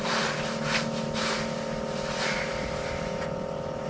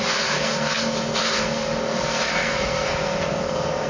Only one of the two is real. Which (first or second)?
first